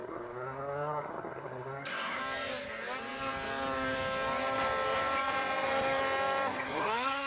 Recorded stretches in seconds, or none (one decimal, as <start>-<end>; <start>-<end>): 2.2-6.6